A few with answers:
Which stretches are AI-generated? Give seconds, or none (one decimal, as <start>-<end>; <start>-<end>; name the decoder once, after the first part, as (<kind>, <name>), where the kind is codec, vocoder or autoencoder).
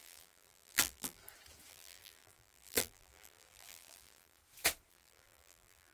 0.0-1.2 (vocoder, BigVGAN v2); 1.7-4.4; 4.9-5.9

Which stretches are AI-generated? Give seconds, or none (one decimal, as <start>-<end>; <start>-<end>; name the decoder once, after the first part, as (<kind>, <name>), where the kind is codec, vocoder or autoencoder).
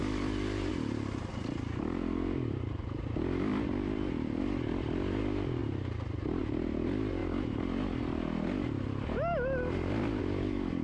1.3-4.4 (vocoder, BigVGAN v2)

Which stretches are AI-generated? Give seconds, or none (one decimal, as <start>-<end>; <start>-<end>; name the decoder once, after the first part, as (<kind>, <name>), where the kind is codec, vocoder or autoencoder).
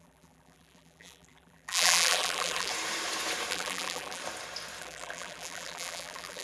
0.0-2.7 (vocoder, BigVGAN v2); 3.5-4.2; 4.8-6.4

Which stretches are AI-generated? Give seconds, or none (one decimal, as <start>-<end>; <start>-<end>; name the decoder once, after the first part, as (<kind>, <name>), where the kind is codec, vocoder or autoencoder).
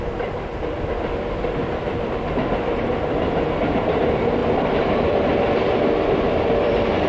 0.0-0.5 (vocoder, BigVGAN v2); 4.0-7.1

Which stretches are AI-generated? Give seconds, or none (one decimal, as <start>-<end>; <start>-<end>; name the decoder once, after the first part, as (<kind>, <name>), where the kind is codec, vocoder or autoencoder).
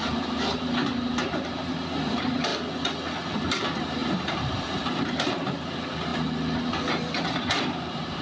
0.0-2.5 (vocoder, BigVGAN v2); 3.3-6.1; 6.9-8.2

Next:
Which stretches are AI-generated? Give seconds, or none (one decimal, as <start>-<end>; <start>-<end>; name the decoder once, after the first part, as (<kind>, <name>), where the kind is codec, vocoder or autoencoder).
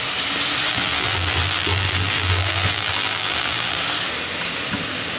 0.7-3.8 (vocoder, BigVGAN v2)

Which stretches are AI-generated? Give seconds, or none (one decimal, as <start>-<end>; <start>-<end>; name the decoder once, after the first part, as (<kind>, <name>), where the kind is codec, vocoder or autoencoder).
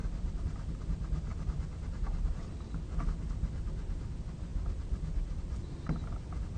0.0-0.8 (vocoder, BigVGAN v2); 1.3-2.4; 4.5-5.4